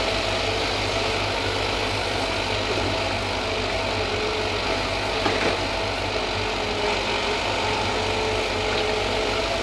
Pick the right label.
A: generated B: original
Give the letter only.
B